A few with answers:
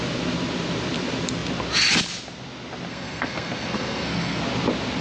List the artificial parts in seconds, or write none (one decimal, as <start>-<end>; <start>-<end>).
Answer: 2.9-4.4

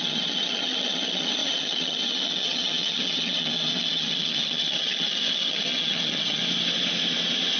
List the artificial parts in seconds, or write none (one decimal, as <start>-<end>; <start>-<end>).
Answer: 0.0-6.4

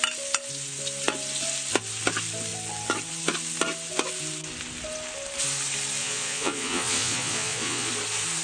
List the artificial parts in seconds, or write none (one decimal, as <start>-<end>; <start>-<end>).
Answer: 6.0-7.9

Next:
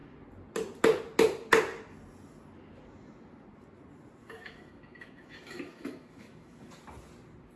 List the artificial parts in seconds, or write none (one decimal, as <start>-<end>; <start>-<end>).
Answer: 4.2-6.7

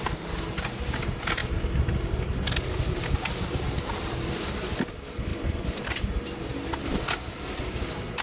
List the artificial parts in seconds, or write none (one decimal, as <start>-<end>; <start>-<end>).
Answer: 1.4-4.8; 5.3-5.9

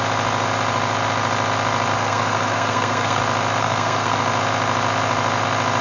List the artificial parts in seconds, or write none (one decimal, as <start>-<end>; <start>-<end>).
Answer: 1.9-3.2; 3.6-4.2

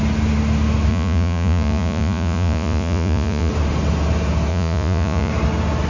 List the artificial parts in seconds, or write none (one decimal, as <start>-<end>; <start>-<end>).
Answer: 0.9-3.5; 4.5-5.3

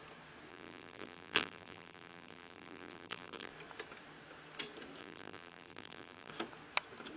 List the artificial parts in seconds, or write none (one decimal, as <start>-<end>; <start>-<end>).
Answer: 0.5-3.5; 5.0-6.3